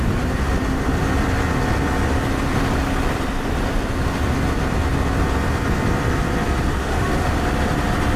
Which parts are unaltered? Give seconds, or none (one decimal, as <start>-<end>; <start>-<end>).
0.0-6.7; 7.4-8.2